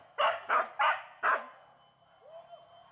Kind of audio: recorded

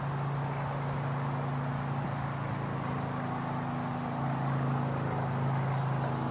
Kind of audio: recorded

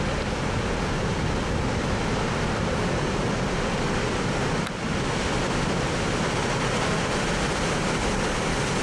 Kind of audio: recorded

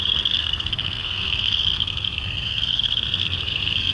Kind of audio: remade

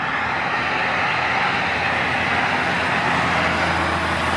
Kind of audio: recorded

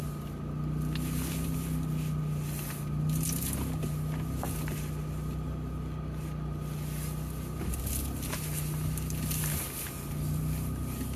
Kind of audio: recorded